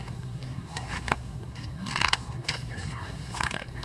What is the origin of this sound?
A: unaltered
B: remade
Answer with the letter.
B